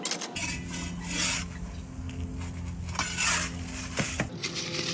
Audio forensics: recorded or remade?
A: recorded